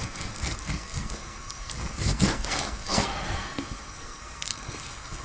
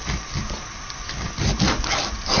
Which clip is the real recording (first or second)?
second